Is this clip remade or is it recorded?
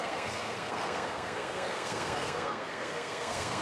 remade